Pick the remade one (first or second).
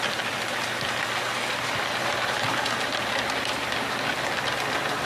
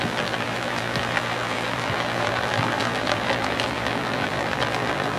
second